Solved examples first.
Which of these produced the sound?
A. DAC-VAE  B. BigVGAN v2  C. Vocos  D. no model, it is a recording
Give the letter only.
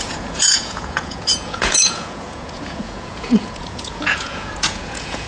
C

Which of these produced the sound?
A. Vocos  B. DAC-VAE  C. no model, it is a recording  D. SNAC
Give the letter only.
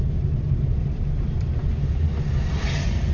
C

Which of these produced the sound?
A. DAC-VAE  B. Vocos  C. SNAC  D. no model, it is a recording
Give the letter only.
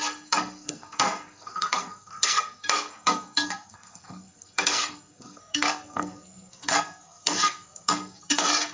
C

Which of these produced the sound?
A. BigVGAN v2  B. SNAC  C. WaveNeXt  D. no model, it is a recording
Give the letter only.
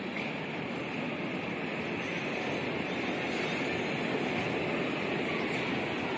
D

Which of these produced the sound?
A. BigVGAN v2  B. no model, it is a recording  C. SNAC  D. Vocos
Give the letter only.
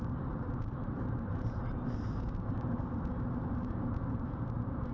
A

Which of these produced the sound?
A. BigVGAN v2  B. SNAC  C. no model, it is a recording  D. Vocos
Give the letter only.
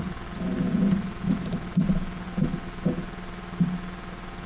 C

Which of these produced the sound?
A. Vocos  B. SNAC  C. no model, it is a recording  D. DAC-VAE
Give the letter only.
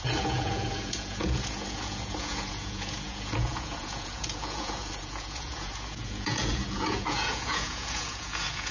A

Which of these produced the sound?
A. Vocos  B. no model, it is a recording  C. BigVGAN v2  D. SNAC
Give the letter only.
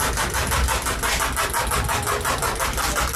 B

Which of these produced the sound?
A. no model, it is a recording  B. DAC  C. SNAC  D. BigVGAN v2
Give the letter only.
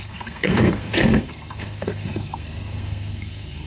C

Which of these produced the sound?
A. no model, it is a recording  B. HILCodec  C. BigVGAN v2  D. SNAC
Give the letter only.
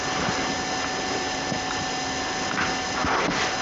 A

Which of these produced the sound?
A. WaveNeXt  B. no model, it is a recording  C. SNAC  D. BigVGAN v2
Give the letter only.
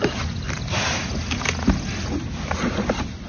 B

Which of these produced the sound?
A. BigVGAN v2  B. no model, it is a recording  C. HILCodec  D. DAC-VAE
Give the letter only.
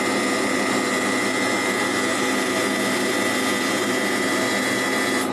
B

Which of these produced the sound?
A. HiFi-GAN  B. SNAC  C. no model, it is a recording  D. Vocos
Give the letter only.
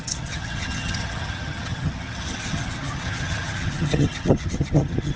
A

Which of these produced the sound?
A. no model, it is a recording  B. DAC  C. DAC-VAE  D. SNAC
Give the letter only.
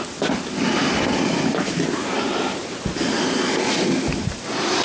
A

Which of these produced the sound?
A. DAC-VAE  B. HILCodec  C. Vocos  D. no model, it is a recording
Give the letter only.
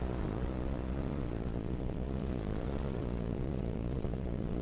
C